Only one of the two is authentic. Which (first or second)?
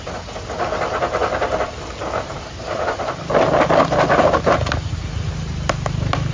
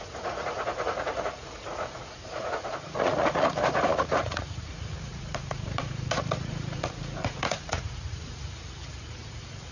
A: first